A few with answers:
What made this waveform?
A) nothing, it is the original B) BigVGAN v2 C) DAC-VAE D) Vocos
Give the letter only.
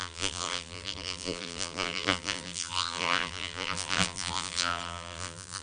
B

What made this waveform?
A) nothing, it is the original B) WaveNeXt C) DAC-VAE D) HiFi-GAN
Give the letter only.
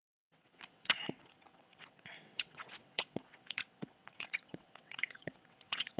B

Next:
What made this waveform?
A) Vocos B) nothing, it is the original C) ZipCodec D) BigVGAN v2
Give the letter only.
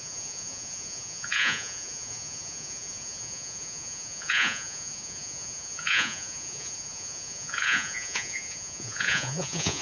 A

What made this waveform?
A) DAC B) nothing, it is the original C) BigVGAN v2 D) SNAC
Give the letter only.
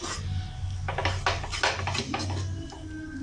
B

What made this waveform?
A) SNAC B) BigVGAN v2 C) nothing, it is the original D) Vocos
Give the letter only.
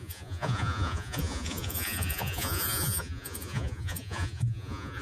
D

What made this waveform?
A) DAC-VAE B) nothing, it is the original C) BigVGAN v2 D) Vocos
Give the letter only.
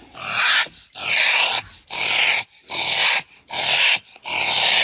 B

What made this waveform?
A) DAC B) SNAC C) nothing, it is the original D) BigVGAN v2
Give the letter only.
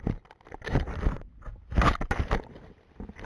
C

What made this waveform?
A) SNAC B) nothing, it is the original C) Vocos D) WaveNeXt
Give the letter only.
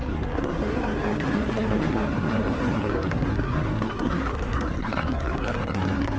A